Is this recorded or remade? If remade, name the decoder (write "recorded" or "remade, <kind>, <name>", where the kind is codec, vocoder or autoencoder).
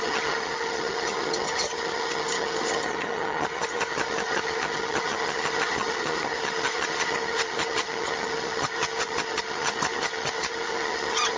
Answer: remade, vocoder, HiFi-GAN